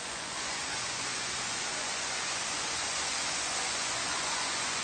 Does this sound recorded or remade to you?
remade